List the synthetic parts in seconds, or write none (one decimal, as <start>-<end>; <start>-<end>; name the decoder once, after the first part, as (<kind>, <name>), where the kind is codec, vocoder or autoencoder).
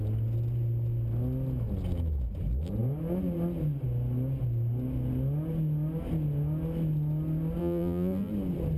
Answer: 7.6-8.3 (vocoder, BigVGAN v2)